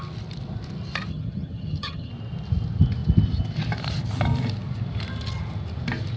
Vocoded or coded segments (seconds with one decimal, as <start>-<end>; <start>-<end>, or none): 1.1-2.1